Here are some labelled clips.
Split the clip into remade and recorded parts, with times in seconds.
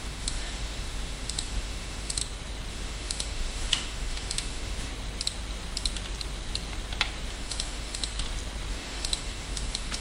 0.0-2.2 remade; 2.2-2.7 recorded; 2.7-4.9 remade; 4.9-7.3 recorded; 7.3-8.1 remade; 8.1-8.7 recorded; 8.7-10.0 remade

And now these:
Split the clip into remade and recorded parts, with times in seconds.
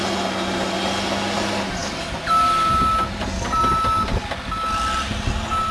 0.0-5.7 recorded